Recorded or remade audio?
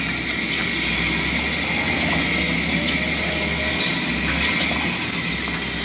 recorded